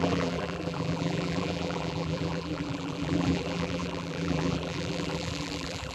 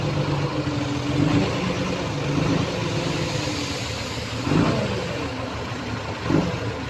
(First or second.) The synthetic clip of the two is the first